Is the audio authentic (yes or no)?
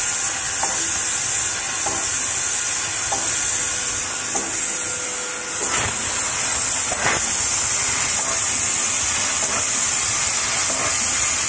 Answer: yes